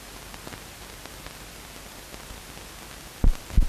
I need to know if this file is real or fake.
real